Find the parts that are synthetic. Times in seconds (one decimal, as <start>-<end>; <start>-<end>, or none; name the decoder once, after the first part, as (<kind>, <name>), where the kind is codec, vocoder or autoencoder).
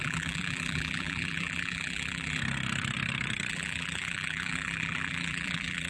0.0-2.4 (vocoder, BigVGAN v2); 3.5-5.9